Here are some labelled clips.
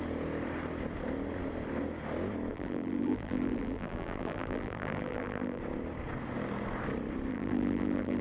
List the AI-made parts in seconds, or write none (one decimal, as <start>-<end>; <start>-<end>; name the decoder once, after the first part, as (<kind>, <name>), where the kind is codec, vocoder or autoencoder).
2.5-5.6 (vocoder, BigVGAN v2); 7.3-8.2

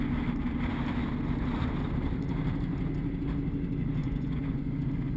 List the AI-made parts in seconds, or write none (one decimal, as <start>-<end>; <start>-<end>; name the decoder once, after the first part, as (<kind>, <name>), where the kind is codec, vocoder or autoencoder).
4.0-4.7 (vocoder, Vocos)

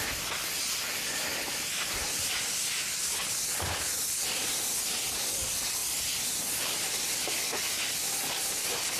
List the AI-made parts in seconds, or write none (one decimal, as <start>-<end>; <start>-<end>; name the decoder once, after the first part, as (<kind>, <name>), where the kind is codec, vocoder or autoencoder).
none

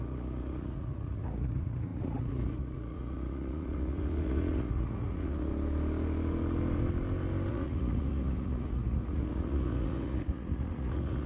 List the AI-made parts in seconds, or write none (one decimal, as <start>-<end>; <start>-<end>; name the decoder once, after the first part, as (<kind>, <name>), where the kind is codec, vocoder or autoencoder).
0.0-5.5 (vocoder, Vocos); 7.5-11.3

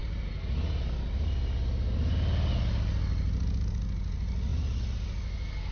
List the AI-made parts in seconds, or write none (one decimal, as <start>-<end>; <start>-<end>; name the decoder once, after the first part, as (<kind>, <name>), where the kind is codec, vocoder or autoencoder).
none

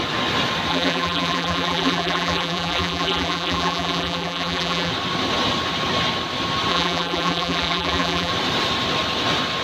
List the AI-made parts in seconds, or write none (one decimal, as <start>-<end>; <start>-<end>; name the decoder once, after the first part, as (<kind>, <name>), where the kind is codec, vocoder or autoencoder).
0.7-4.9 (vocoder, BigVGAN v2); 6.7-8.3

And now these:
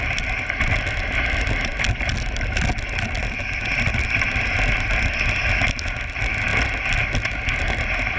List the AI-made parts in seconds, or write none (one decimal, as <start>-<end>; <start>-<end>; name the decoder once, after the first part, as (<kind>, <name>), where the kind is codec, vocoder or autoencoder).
none